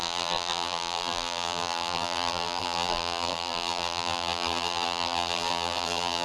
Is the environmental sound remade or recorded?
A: remade